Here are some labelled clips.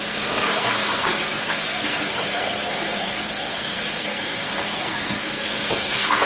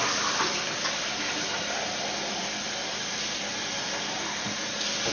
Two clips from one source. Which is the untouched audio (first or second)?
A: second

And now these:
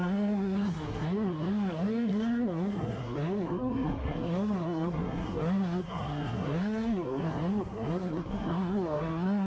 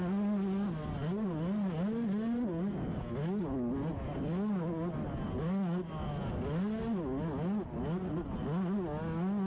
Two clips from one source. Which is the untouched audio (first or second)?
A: second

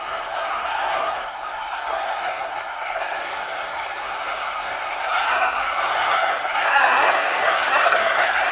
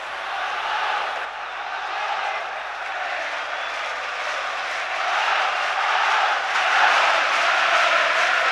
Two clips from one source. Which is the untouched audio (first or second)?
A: second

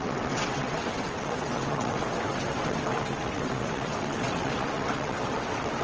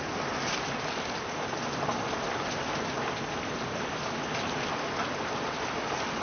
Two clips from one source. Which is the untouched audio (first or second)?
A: second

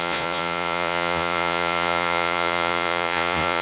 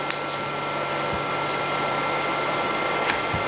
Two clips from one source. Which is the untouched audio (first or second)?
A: second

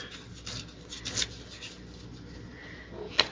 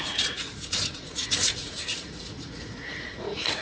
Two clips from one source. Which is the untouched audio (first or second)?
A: first